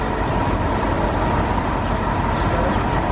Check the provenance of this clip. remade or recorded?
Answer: recorded